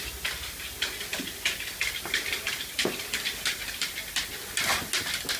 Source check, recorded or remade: recorded